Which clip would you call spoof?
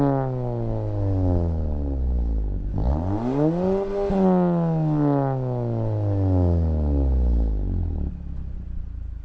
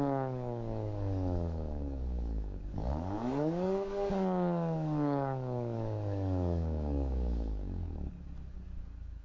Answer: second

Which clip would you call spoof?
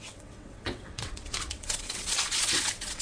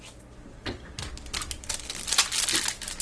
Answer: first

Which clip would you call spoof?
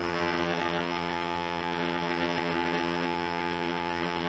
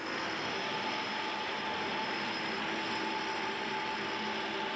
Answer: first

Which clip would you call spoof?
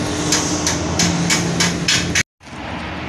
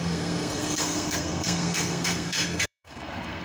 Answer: second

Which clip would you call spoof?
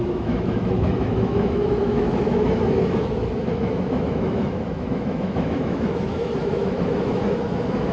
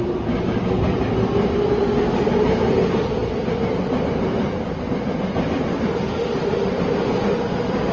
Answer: first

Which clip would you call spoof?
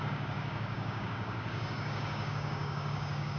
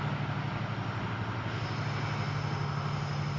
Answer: first